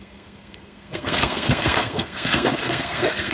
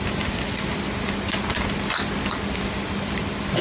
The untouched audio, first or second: second